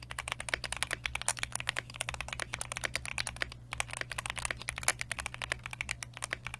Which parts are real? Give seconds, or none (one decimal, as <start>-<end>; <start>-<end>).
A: 0.0-1.3; 2.1-6.6